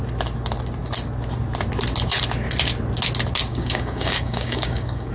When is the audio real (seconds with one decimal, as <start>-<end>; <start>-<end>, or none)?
0.0-3.5